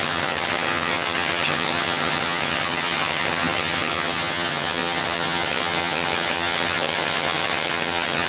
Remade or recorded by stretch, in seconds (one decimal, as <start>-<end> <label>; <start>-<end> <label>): 0.0-8.3 remade